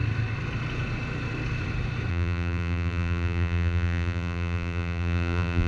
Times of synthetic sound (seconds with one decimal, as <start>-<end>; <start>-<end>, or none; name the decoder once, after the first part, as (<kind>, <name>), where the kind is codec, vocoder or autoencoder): 2.1-5.7 (vocoder, BigVGAN v2)

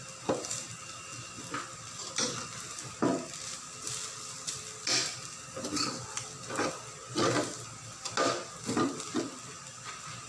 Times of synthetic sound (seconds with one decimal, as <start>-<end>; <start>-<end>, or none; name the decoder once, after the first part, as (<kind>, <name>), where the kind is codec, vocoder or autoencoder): none

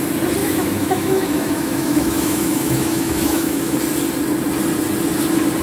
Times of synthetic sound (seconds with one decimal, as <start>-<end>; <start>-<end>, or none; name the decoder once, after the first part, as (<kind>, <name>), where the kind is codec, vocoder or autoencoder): 0.4-3.8 (autoencoder, DAC-VAE)

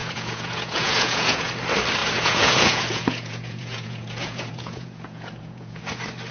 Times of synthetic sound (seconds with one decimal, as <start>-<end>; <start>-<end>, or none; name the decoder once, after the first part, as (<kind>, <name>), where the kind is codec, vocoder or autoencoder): 0.0-1.5 (vocoder, Vocos); 2.0-5.8

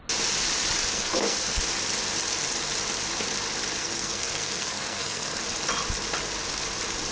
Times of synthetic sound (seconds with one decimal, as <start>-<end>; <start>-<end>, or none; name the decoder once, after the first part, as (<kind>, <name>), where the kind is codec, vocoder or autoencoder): 0.9-1.6 (codec, SNAC); 3.8-5.4

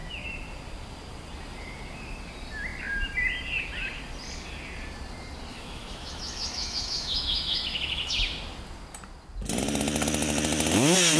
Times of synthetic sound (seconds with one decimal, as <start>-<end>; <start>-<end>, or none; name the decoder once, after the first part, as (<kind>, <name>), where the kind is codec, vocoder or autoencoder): 5.5-8.3 (autoencoder, DAC-VAE)

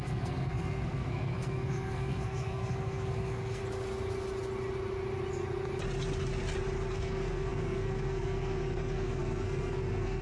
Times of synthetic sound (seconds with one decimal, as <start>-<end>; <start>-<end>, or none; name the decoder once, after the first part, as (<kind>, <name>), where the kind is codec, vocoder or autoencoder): 0.0-3.6 (codec, SNAC); 6.9-10.2